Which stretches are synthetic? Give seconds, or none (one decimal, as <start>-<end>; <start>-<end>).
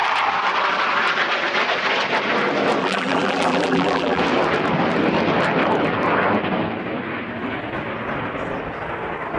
2.8-4.2